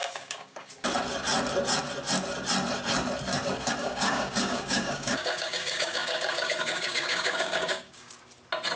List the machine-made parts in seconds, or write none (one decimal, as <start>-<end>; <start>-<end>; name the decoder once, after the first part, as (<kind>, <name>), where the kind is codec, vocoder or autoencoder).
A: 0.0-0.7 (codec, DAC); 3.8-8.1